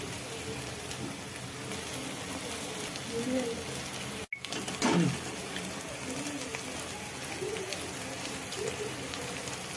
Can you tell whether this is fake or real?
real